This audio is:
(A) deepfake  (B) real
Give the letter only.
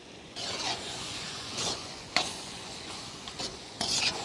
A